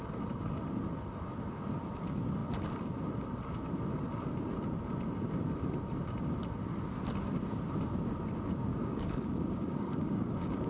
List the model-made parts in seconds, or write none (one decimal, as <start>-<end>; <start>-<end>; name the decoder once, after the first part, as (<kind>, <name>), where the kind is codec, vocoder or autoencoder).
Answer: 8.7-10.7 (codec, DAC)